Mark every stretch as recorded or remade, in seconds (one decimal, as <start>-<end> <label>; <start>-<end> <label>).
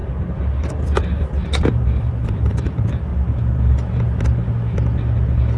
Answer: 0.0-1.7 recorded; 1.7-3.1 remade; 3.1-5.6 recorded